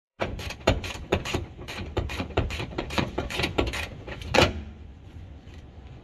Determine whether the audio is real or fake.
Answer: fake